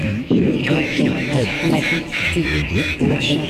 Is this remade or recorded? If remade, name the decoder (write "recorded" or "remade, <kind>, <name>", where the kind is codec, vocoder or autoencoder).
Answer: remade, autoencoder, DAC-VAE